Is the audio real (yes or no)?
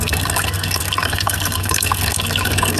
no